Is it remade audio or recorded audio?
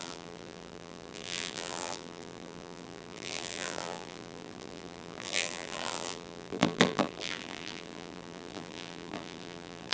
remade